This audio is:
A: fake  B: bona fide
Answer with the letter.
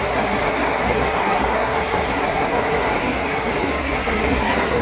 A